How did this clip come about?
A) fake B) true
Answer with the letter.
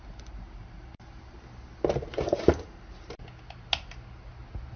B